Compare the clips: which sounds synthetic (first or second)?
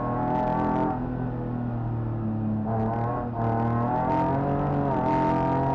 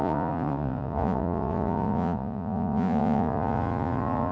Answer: second